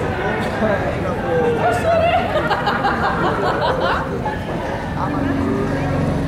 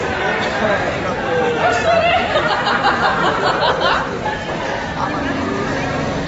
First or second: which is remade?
second